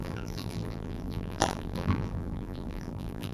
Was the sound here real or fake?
fake